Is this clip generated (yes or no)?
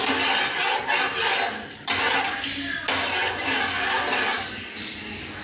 no